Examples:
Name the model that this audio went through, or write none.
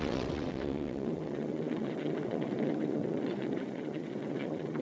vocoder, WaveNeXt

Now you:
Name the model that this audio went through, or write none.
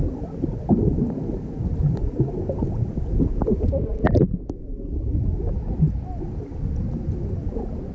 none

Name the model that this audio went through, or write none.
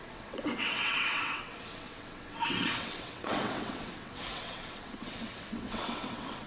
vocoder, WaveNeXt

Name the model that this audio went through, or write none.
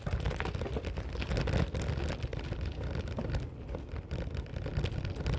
none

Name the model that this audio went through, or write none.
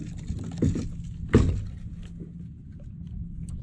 none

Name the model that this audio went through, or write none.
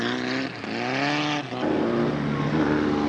none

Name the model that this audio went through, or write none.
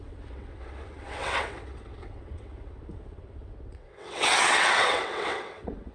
vocoder, WaveNeXt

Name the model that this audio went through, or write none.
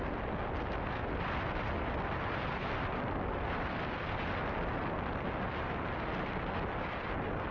none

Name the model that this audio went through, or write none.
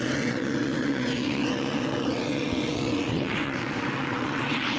vocoder, WaveNeXt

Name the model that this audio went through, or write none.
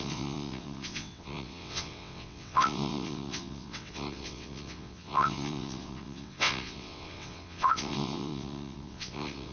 vocoder, WaveNeXt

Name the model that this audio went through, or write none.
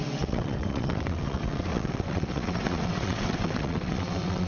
vocoder, WaveNeXt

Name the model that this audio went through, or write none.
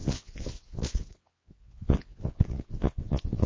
vocoder, WaveNeXt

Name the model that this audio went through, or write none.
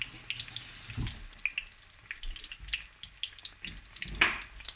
none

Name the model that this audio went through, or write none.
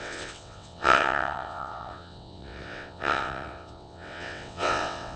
vocoder, WaveNeXt